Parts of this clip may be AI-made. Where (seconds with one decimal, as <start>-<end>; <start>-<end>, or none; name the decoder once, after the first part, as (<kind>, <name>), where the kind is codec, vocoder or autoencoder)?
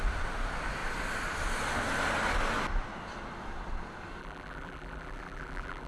4.2-5.9 (vocoder, BigVGAN v2)